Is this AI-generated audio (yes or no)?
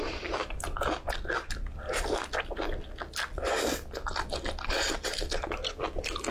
no